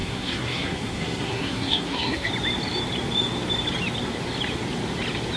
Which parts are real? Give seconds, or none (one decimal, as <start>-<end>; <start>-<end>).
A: 2.3-5.4